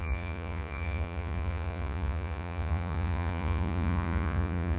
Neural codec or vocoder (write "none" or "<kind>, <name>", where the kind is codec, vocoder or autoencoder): vocoder, Vocos